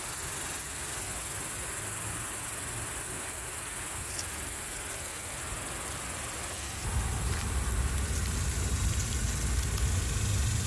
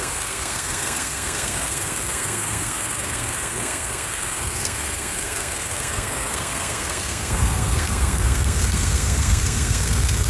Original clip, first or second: first